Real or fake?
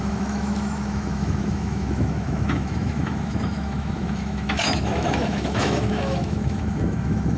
fake